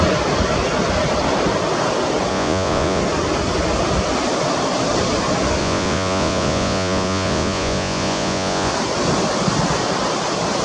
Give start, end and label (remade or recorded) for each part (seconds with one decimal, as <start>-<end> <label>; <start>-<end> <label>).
0.0-2.3 recorded; 2.3-3.0 remade; 3.0-5.6 recorded; 5.6-8.7 remade; 8.7-10.6 recorded